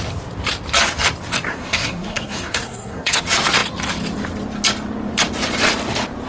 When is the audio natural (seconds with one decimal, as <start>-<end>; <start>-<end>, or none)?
0.0-1.5; 3.2-6.3